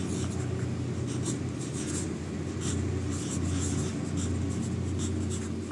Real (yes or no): yes